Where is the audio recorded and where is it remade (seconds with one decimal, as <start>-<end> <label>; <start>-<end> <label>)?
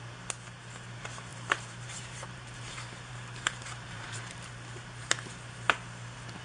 0.0-1.3 recorded; 1.3-4.5 remade; 4.5-6.4 recorded